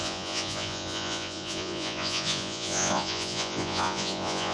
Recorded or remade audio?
remade